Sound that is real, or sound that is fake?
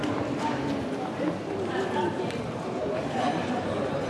real